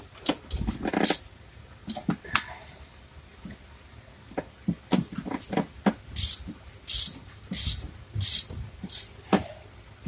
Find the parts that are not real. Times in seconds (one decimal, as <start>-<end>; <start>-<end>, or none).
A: none